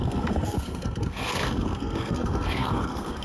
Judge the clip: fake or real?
fake